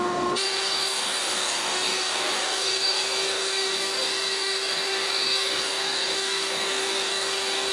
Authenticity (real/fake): fake